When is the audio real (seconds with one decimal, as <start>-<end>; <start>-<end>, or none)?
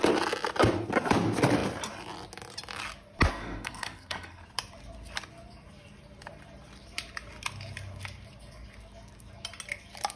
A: 0.0-3.3; 4.4-10.2